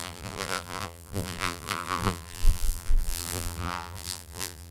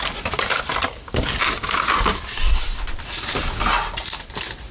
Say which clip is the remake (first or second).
first